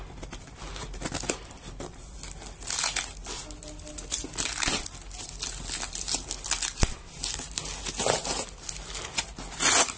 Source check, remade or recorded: recorded